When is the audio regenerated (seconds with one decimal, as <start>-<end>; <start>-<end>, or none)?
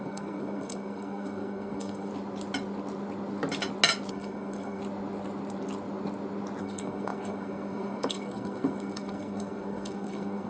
0.0-2.1; 4.1-4.8; 6.6-10.5